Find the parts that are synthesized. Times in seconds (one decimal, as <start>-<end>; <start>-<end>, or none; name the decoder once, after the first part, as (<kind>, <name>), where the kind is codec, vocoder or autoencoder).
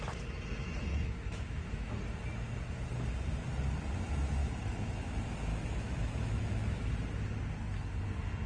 0.9-2.0 (autoencoder, DAC-VAE); 4.4-5.1; 5.5-6.9